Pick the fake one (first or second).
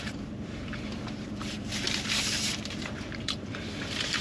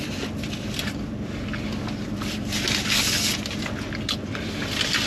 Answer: first